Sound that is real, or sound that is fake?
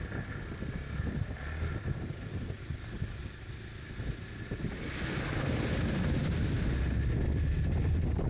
real